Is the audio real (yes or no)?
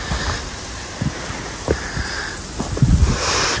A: yes